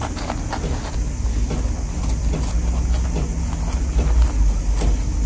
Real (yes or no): yes